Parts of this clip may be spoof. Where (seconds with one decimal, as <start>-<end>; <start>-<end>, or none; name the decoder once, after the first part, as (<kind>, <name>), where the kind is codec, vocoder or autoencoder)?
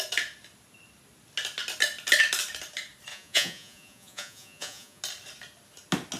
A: 3.1-5.0 (vocoder, Vocos)